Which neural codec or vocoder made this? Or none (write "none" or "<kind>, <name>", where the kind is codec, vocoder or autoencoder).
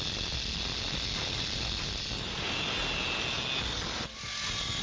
none